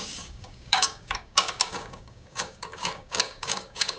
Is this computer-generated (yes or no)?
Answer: yes